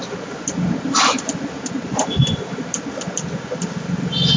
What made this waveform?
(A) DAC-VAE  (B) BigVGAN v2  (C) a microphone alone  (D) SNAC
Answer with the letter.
C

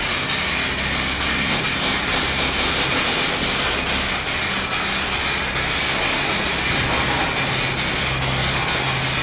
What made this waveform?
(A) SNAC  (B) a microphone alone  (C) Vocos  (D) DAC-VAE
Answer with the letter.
B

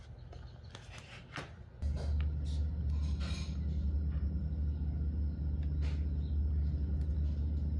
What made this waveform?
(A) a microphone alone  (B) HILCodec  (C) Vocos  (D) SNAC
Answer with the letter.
A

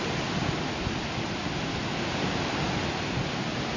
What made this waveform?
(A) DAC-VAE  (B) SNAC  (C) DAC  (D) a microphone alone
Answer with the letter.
D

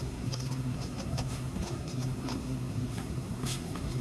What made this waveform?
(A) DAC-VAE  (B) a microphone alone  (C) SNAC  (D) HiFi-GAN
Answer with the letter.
C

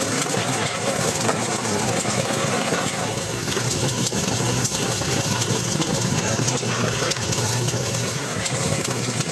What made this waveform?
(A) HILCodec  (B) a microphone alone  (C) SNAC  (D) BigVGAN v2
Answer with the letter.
C